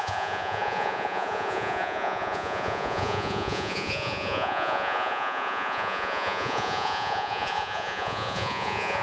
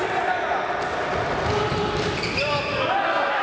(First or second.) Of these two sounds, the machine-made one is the first